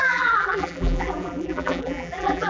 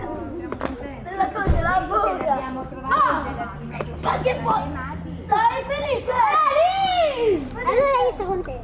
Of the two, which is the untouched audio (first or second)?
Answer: second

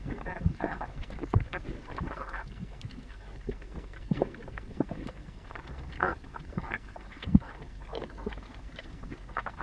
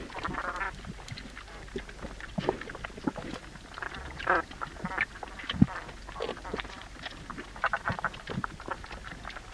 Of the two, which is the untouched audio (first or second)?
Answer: second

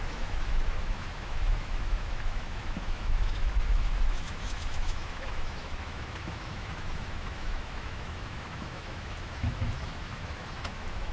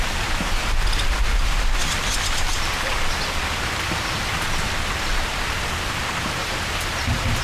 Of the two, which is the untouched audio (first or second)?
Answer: second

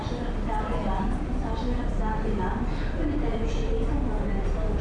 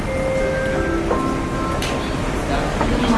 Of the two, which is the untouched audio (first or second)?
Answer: second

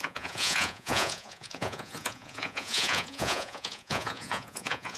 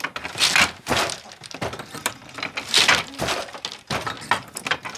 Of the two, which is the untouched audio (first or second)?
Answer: second